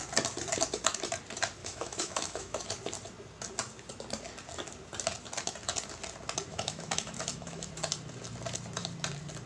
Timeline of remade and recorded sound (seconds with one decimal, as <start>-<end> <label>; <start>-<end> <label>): 0.0-1.6 recorded; 1.6-2.6 remade; 2.6-6.5 recorded; 6.5-7.7 remade; 7.7-9.5 recorded